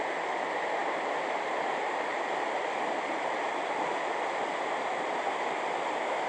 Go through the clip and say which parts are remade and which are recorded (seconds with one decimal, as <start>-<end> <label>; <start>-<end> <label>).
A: 0.0-6.3 recorded